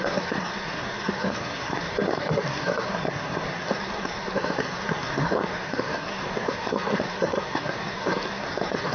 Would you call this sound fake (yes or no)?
yes